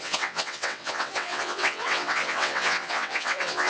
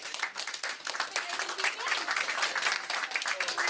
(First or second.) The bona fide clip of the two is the second